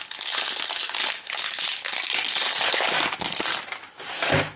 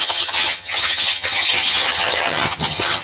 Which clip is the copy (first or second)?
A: second